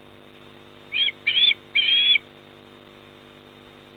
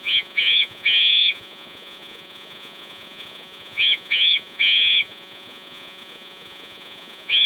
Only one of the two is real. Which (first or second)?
first